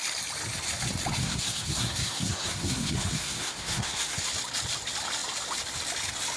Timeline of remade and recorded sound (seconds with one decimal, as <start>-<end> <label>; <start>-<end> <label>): 0.0-1.2 recorded; 1.2-4.2 remade; 4.2-6.4 recorded